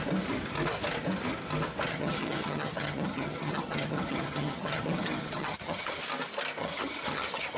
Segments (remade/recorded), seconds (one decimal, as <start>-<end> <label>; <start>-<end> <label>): 0.0-1.9 recorded; 1.9-6.0 remade; 6.0-6.6 recorded; 6.6-7.6 remade